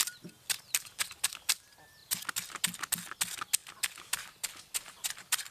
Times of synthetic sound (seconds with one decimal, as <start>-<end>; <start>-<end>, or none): none

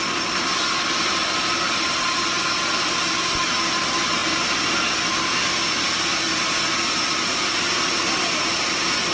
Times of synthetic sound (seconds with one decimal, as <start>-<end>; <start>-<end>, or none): none

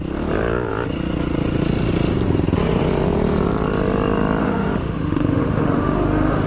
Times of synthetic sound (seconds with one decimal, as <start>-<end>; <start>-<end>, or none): 4.4-6.5

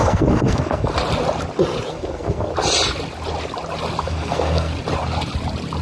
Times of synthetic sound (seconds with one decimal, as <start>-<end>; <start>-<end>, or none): 0.0-0.9; 1.9-2.5; 4.0-4.7

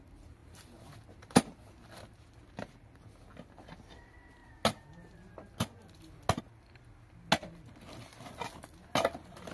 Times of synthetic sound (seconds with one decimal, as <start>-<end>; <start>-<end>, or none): none

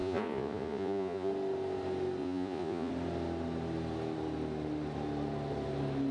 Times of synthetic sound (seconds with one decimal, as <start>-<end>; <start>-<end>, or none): 0.0-1.3; 2.2-2.9

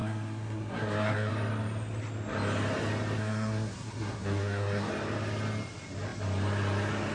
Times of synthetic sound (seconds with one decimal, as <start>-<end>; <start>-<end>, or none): 0.0-1.3; 3.2-4.9

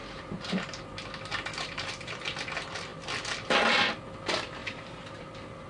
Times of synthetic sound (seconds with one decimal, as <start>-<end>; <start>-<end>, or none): 0.0-0.8; 1.5-2.2; 4.6-5.2